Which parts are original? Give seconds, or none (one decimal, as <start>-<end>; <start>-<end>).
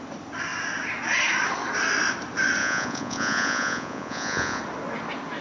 0.0-2.6; 4.6-5.4